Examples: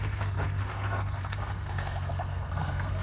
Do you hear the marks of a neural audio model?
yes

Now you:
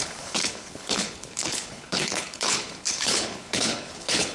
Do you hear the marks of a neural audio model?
yes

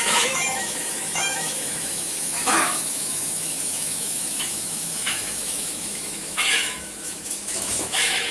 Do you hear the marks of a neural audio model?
yes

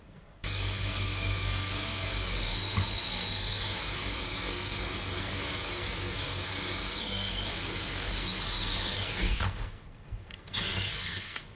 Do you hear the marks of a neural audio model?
yes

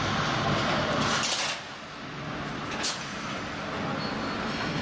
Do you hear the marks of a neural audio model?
no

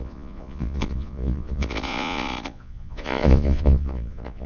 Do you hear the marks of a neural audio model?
yes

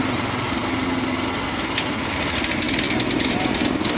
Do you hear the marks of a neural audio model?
no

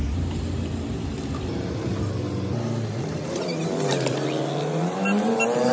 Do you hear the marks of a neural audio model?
no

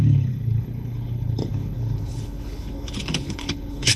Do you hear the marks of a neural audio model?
yes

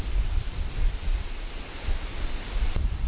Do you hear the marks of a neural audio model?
no